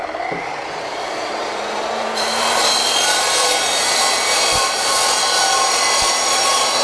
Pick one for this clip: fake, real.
fake